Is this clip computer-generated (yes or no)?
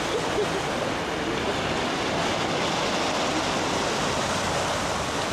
no